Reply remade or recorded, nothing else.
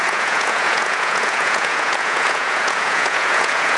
remade